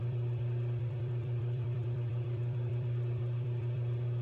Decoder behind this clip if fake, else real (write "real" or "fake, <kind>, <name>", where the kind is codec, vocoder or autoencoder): fake, vocoder, BigVGAN v2